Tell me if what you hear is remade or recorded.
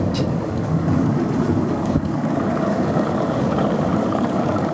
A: remade